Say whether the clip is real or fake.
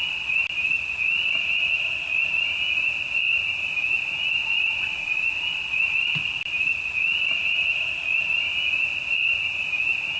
real